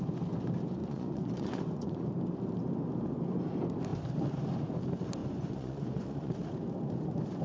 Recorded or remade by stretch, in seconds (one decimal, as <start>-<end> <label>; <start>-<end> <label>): 0.0-0.8 recorded; 0.8-2.1 remade; 2.1-5.2 recorded; 5.2-6.3 remade; 6.3-7.4 recorded